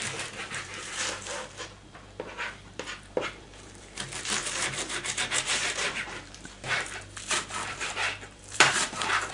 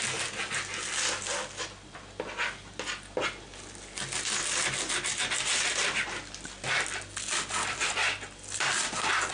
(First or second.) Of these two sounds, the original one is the second